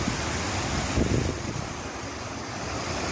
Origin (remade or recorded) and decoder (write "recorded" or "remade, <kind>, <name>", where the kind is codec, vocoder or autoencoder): recorded